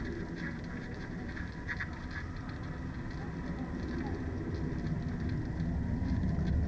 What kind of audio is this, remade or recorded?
recorded